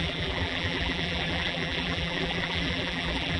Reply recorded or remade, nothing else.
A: remade